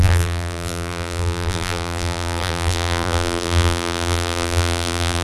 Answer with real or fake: fake